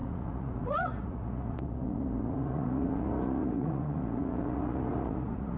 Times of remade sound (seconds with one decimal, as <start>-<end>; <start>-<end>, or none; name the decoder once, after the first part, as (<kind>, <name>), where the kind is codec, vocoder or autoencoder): 0.0-5.6 (vocoder, Vocos)